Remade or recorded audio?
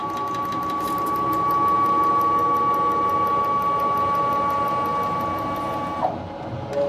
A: recorded